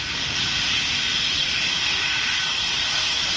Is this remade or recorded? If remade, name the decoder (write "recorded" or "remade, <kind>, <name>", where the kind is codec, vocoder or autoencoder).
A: recorded